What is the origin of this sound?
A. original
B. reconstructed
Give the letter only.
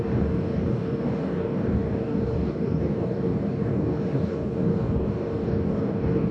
B